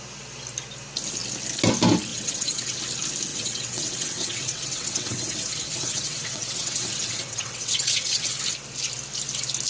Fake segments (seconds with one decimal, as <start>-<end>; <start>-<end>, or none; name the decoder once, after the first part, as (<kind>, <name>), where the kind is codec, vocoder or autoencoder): 2.1-2.8 (vocoder, WaveNeXt); 3.3-8.4